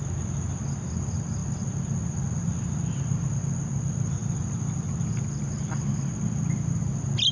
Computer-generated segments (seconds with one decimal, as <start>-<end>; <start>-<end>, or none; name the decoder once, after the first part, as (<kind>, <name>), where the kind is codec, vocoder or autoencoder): none